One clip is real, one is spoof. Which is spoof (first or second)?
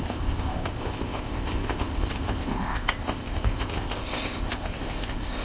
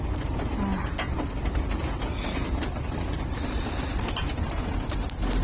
first